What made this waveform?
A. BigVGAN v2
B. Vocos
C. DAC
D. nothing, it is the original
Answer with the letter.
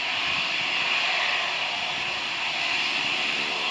D